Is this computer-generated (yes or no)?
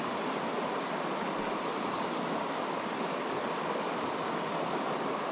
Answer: no